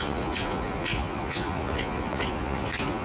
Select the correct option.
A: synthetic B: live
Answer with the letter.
A